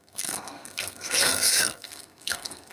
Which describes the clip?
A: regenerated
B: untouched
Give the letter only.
A